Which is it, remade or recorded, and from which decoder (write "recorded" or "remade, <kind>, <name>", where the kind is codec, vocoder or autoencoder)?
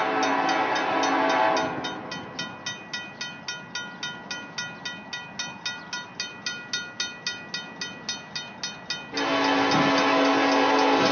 recorded